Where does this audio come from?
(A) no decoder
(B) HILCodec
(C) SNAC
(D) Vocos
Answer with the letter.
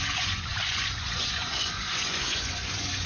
D